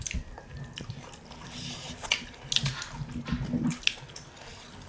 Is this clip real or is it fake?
real